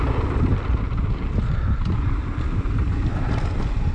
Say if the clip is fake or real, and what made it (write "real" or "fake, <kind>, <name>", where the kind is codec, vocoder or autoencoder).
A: real